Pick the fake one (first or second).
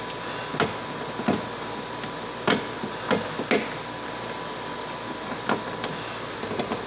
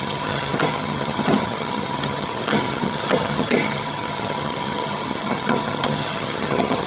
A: second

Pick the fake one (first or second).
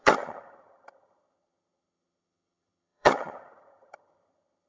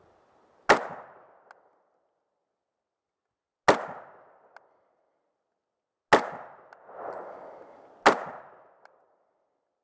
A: first